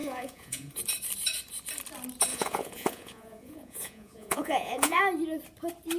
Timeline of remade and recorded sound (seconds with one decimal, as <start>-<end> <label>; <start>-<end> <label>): 0.0-0.8 remade; 0.8-2.3 recorded; 2.3-5.0 remade; 5.0-6.0 recorded